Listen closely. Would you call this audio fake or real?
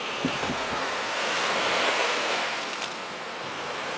fake